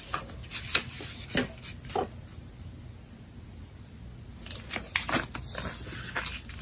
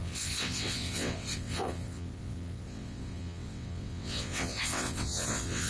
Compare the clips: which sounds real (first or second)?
first